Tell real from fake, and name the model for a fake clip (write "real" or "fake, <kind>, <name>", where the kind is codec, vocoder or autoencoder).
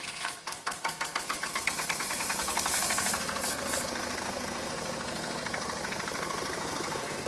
fake, codec, SNAC